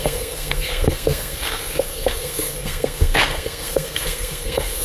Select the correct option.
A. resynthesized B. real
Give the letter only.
A